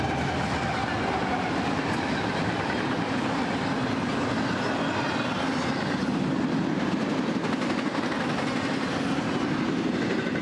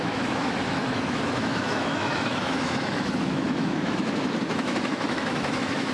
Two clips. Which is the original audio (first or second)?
first